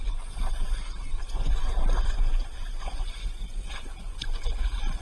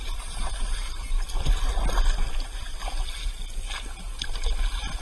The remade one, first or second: first